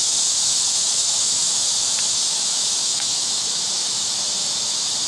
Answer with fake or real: fake